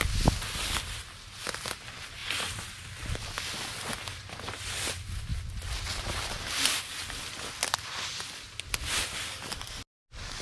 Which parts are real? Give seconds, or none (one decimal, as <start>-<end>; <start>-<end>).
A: 0.0-10.4